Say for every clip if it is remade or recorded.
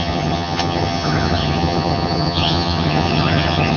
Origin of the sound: remade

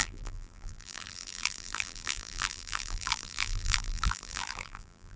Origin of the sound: remade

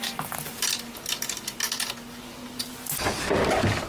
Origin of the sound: recorded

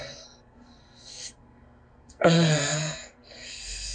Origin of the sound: remade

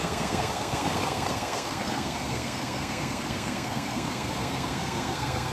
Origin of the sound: remade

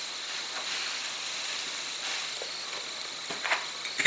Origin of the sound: recorded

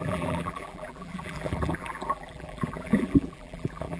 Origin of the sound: remade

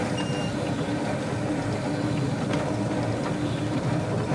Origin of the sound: recorded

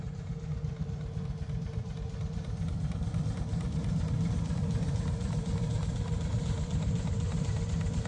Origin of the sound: recorded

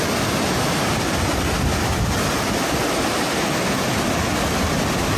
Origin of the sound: recorded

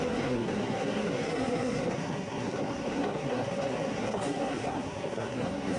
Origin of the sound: remade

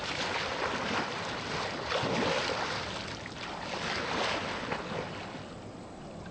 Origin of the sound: recorded